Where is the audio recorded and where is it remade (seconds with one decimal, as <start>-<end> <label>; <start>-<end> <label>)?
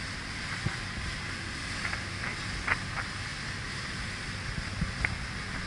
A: 0.0-5.7 recorded